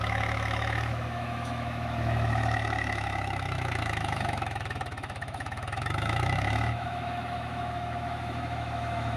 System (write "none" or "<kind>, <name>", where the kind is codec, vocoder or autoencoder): autoencoder, DAC-VAE